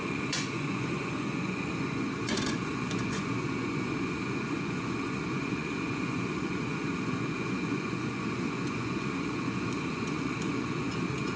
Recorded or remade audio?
remade